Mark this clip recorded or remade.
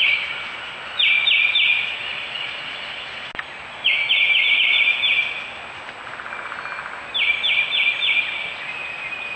recorded